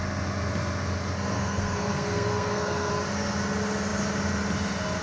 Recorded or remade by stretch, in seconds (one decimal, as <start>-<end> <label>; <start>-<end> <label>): 0.0-1.3 recorded; 1.3-2.9 remade; 2.9-5.0 recorded